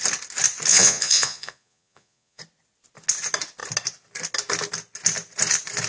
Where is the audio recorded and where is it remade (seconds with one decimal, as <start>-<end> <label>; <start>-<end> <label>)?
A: 0.0-0.7 recorded; 0.7-2.4 remade; 2.4-5.9 recorded